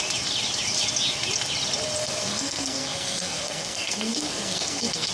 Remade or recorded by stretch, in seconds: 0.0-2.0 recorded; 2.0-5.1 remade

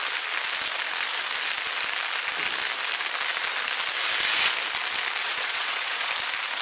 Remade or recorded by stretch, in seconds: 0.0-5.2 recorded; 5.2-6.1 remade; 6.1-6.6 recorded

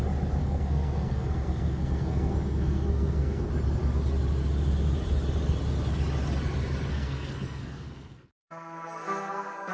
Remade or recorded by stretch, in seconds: 0.0-0.4 recorded; 0.4-3.5 remade; 3.5-6.9 recorded; 6.9-9.7 remade

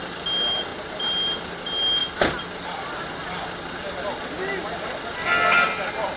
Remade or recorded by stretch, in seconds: 0.0-6.2 recorded

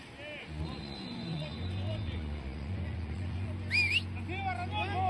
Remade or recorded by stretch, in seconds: 0.0-0.4 recorded; 0.4-3.5 remade; 3.5-5.1 recorded

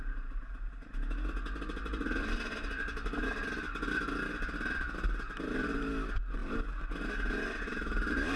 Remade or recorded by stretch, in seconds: 0.0-8.4 recorded